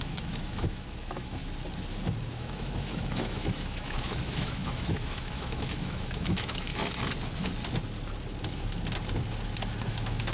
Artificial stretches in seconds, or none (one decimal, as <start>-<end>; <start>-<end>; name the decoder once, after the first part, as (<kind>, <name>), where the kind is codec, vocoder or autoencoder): 0.0-1.4 (autoencoder, DAC-VAE); 2.3-6.7; 9.9-10.3